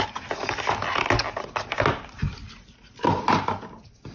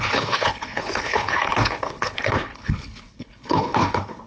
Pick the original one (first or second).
first